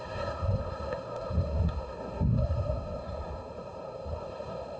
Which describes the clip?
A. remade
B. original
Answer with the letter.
A